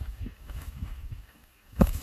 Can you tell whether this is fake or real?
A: fake